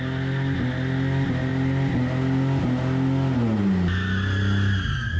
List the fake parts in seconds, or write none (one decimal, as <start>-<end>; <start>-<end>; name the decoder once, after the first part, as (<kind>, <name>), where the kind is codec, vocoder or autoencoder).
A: none